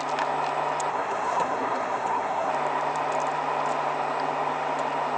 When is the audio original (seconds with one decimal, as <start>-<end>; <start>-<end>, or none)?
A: 0.0-0.9; 2.5-5.2